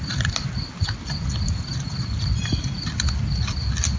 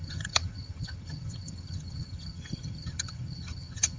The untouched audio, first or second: first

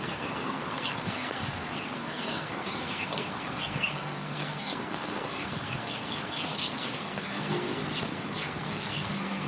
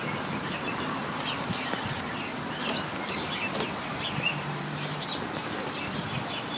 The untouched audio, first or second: second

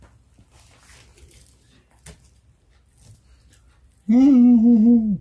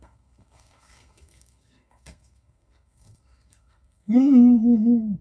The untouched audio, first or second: first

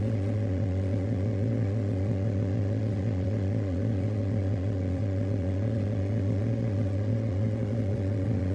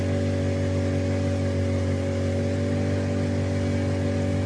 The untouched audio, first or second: second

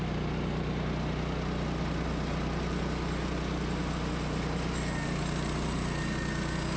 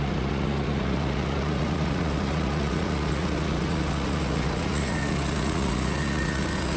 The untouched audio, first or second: first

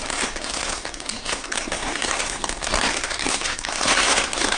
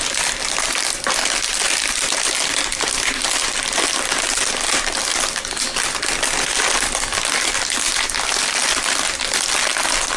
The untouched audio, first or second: second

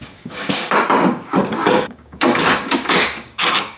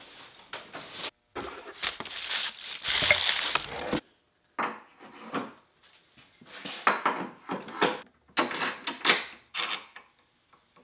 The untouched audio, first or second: second